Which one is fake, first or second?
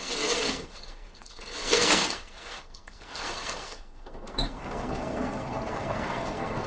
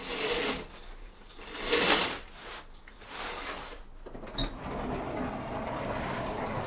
first